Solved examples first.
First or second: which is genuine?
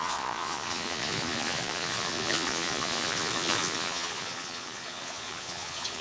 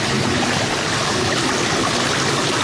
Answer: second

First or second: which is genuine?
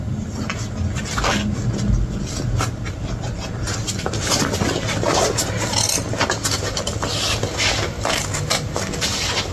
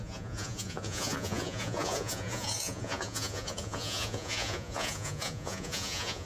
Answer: first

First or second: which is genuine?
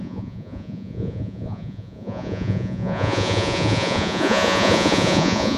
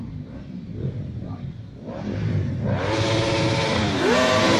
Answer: second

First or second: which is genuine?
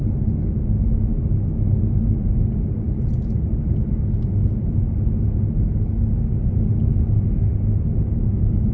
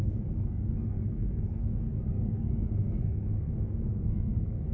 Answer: first